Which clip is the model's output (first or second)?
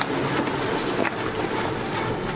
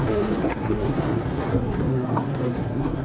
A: second